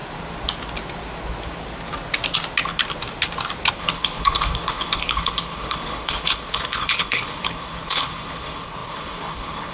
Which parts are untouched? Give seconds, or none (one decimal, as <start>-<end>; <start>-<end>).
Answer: 0.0-3.8